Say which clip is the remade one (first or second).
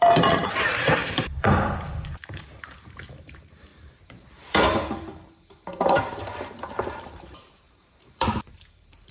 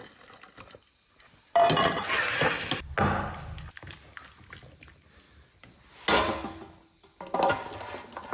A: first